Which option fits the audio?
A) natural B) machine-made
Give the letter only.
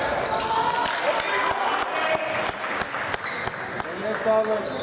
A